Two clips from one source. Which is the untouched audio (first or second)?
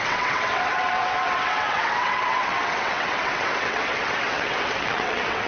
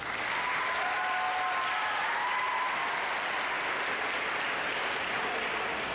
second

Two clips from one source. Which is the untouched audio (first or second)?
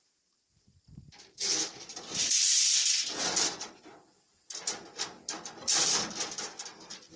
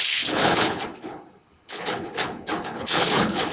first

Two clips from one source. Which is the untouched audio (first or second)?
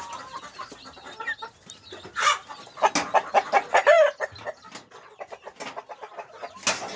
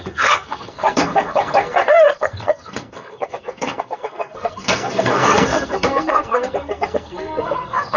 first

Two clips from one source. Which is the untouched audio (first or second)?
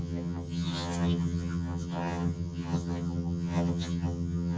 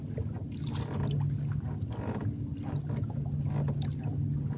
second